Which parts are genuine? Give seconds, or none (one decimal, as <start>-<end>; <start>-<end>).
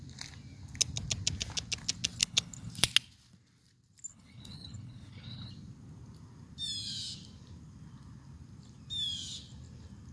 0.0-2.2; 2.7-4.1; 5.5-10.1